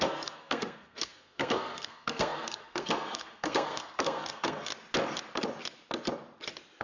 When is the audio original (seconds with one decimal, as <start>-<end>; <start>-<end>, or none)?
4.7-6.8